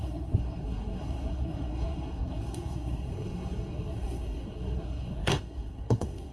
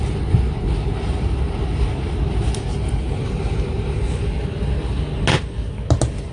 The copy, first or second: first